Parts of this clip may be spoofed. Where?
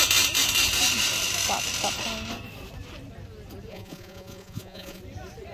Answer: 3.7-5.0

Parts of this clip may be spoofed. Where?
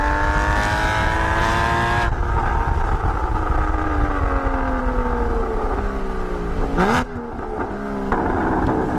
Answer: 1.0-1.7; 3.2-4.2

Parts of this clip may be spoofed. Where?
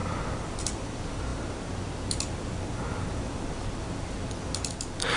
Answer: 1.3-4.4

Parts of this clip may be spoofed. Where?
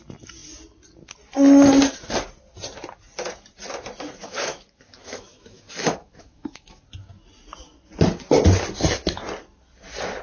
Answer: 4.2-6.8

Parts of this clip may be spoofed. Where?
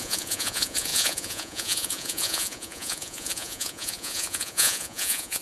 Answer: 0.0-5.4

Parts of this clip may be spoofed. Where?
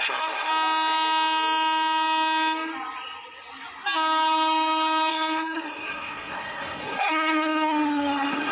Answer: 0.0-0.5; 5.1-8.5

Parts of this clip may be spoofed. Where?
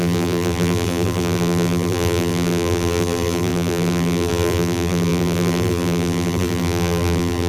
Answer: 0.0-7.5